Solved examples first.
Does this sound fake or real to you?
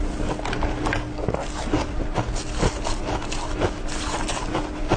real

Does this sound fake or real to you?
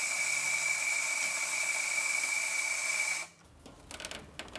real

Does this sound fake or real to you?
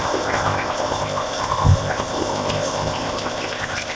fake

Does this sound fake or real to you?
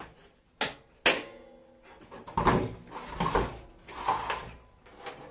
real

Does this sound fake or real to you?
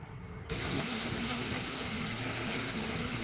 fake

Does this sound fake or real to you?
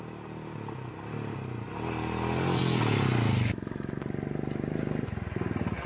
real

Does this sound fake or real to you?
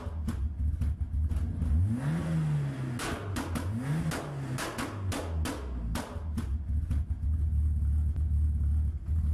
real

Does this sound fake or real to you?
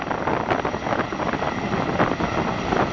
real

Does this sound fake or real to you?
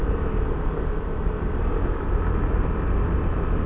real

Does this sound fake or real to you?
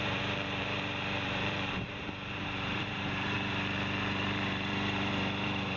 fake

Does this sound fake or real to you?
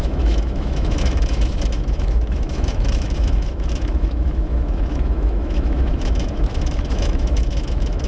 fake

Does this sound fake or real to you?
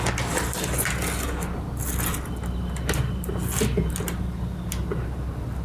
real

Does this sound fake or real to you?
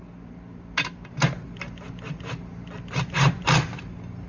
real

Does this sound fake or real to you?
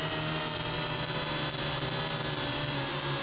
real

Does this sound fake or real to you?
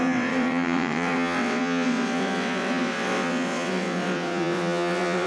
fake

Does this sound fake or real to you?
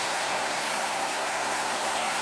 fake